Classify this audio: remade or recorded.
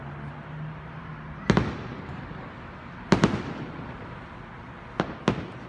recorded